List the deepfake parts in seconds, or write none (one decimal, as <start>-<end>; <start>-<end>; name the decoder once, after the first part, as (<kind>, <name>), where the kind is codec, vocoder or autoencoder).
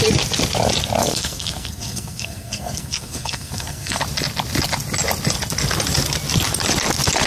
1.0-4.0 (codec, SNAC)